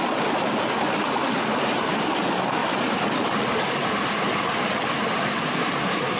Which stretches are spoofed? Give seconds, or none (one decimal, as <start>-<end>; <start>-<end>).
2.6-3.1

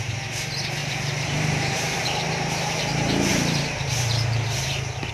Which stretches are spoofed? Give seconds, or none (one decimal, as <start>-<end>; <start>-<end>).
0.8-2.8; 3.3-5.1